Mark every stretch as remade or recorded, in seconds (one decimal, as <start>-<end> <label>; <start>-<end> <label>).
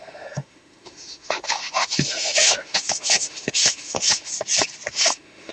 0.0-4.3 remade; 4.3-4.9 recorded; 4.9-5.5 remade